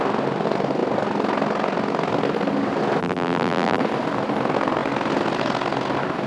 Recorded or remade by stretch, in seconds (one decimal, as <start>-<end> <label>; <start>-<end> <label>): 0.0-3.0 recorded; 3.0-3.8 remade; 3.8-6.3 recorded